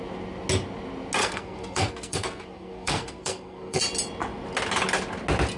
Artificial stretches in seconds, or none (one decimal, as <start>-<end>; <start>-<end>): 1.2-3.8